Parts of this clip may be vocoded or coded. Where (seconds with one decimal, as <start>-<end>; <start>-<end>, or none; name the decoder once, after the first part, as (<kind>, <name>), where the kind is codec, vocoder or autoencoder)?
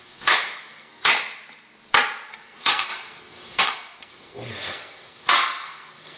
0.0-1.1 (codec, SNAC); 2.3-6.2